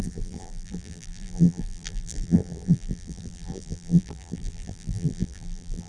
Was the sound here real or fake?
fake